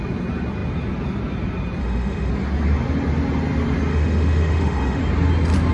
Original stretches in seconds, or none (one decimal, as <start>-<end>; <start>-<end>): 0.0-1.8; 2.3-3.9; 5.0-5.7